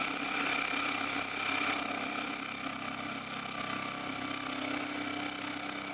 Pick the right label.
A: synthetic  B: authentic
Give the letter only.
B